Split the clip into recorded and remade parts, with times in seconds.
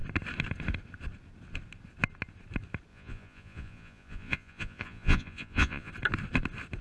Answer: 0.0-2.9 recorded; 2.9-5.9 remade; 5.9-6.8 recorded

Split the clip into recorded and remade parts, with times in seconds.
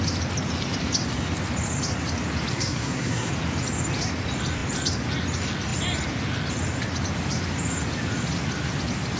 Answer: 0.0-2.5 recorded; 2.5-3.3 remade; 3.3-9.2 recorded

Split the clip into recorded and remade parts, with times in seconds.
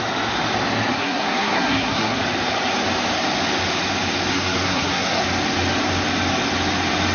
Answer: 0.0-0.9 recorded; 0.9-2.2 remade; 2.2-4.3 recorded; 4.3-5.2 remade; 5.2-7.1 recorded